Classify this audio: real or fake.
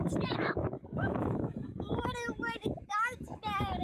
fake